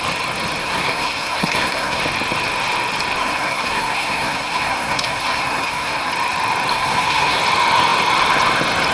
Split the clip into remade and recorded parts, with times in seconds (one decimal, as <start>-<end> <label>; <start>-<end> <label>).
0.0-0.6 recorded; 0.6-2.0 remade; 2.0-3.2 recorded; 3.2-6.1 remade; 6.1-6.7 recorded; 6.7-7.4 remade; 7.4-8.9 recorded